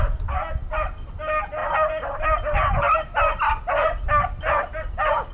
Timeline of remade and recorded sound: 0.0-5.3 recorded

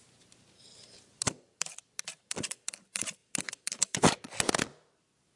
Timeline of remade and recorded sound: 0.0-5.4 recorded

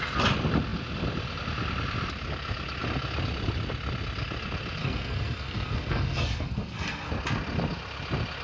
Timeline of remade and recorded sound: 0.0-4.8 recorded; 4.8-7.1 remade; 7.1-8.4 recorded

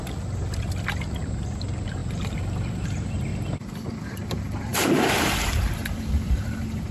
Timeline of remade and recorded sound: 0.0-1.2 recorded; 1.2-2.0 remade; 2.0-2.7 recorded; 2.7-3.3 remade; 3.3-3.9 recorded; 3.9-6.9 remade

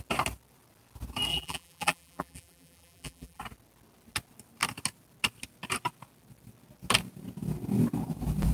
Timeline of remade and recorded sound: 0.0-1.3 recorded; 1.3-3.4 remade; 3.4-8.5 recorded